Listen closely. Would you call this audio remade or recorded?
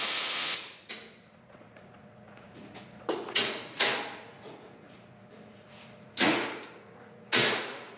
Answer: remade